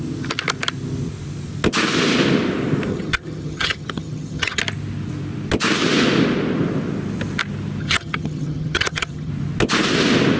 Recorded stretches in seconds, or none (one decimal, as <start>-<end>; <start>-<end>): 0.0-2.9; 4.6-7.8; 9.3-10.4